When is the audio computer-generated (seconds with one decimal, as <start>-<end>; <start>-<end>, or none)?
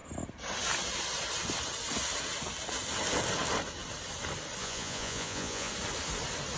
4.6-5.7